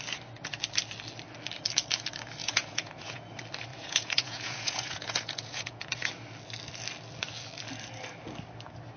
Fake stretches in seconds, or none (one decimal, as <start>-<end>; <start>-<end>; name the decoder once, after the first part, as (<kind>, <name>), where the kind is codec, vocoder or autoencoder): 2.4-3.2 (vocoder, Vocos); 3.7-6.1

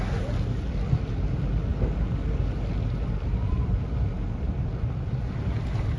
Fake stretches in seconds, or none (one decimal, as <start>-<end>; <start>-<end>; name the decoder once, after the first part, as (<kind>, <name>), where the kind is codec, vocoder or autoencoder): none

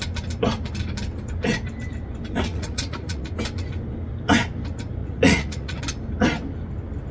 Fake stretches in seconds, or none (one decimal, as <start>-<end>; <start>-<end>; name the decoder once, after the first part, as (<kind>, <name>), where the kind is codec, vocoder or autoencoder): 2.5-3.3 (vocoder, Vocos); 5.0-5.8

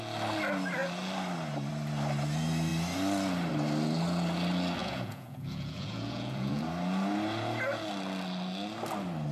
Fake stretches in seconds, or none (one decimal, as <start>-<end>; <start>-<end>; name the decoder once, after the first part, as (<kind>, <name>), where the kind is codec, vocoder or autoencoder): 4.8-6.6 (vocoder, Vocos)

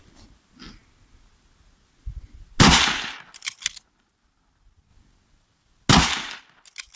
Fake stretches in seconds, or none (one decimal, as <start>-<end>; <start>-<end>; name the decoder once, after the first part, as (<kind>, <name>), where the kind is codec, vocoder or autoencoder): none